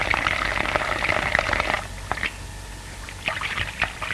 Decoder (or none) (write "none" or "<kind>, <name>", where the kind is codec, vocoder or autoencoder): vocoder, BigVGAN v2